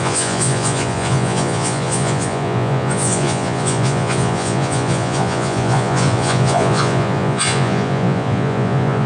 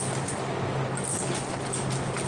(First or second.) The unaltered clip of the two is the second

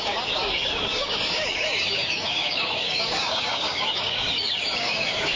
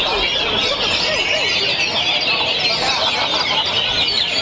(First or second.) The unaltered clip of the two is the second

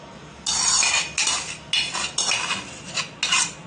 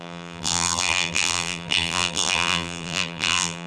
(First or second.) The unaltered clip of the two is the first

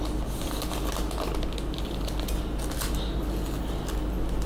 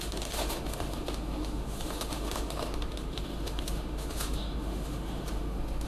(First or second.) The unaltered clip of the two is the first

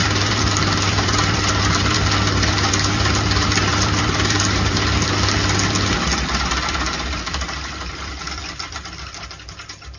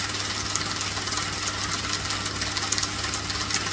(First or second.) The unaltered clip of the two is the second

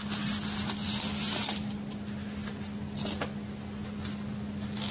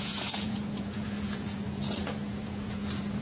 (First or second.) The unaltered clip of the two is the first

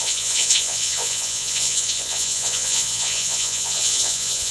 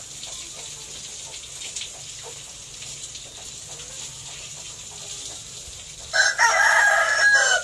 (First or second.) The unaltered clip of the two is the second